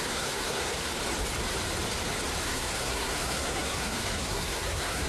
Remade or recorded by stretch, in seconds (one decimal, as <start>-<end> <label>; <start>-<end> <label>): 0.0-0.9 remade; 0.9-2.4 recorded; 2.4-5.1 remade